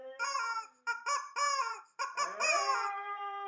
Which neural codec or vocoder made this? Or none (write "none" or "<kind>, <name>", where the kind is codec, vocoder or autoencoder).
vocoder, BigVGAN v2